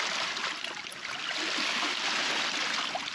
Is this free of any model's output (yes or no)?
yes